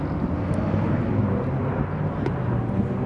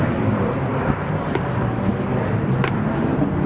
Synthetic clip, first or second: second